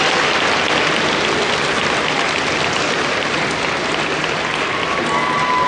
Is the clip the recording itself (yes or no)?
yes